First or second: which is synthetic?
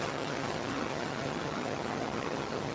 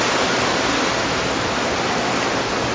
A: first